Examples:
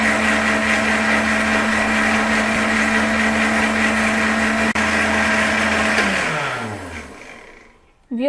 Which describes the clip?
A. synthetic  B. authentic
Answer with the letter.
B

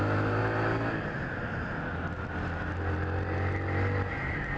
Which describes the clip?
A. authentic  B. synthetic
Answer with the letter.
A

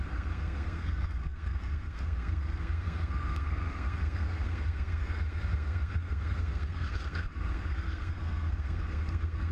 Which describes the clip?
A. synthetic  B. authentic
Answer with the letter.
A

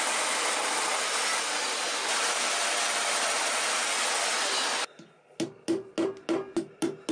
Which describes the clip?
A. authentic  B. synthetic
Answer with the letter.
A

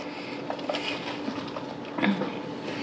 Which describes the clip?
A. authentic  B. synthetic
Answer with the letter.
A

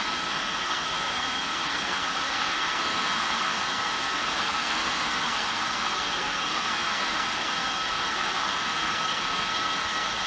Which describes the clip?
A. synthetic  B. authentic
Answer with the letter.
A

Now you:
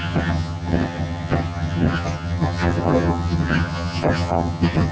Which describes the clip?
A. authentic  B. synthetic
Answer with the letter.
B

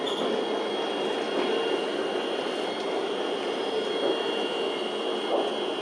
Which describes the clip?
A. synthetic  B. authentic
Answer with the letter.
B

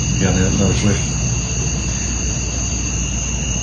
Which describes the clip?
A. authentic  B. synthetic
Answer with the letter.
A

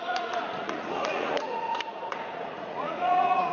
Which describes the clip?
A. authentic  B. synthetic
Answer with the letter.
B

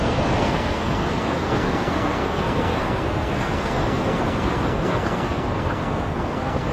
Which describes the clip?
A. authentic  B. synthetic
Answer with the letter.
B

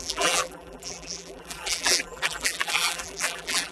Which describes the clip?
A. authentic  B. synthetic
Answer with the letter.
B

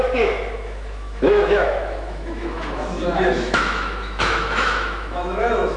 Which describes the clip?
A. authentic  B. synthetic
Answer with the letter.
B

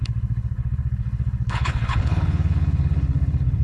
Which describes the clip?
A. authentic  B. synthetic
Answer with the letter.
B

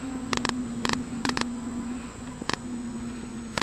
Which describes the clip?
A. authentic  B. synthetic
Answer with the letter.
B